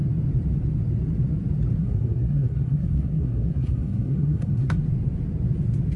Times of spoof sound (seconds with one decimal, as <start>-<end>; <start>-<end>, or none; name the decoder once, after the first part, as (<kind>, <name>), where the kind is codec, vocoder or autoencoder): 1.8-4.8 (codec, SNAC)